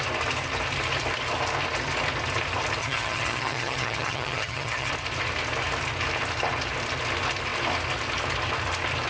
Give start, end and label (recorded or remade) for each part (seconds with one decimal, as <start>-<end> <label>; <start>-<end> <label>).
0.0-2.8 recorded; 2.8-4.9 remade; 4.9-9.1 recorded